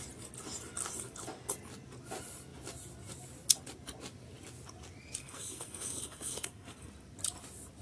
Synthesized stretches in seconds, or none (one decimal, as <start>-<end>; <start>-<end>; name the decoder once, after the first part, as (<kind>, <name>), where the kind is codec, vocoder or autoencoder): 5.2-6.9 (codec, SNAC)